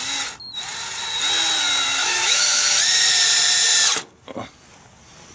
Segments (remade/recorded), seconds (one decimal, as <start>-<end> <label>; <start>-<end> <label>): 0.0-2.0 recorded; 2.0-2.6 remade; 2.6-5.3 recorded